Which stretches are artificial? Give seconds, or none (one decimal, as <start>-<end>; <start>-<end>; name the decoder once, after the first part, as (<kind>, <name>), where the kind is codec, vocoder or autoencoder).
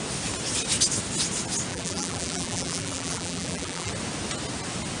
1.7-3.9 (vocoder, BigVGAN v2)